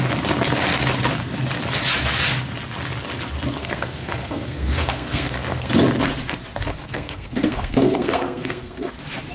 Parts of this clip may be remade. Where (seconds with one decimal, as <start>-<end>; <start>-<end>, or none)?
3.6-5.7; 6.7-8.9